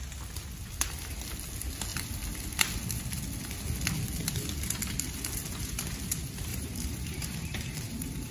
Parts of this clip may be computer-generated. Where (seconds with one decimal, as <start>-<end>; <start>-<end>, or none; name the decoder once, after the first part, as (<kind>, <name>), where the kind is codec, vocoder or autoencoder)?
6.5-8.3 (vocoder, BigVGAN v2)